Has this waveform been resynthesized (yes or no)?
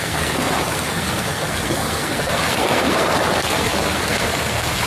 yes